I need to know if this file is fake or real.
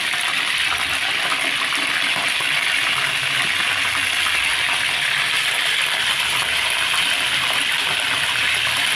real